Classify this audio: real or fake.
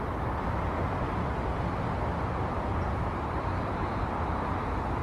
real